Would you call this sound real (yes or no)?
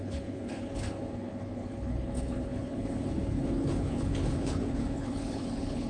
no